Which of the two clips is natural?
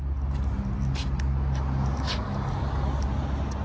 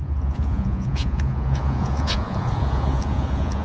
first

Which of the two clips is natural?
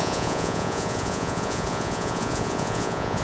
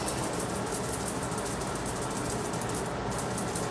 second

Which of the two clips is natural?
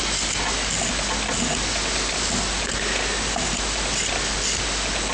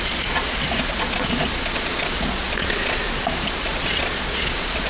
first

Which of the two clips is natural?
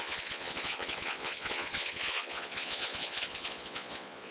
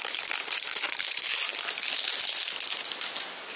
second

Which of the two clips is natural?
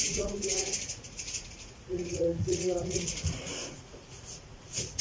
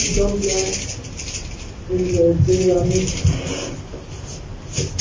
second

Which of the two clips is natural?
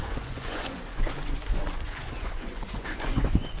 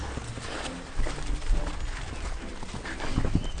second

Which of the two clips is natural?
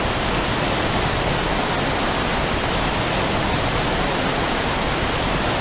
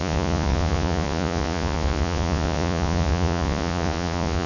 first